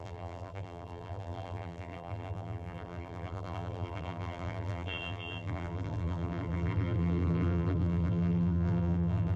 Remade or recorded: remade